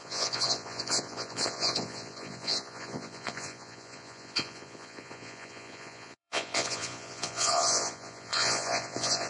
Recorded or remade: remade